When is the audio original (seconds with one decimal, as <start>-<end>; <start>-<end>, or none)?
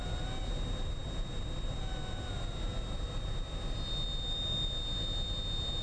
0.0-5.8